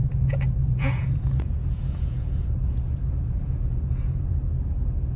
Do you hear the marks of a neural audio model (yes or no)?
yes